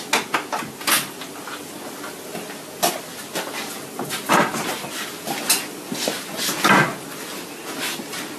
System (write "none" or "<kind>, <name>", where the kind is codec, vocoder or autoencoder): none